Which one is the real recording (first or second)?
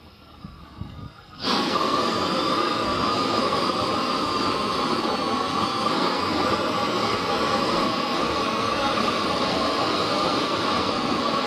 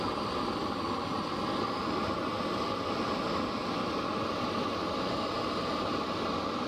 second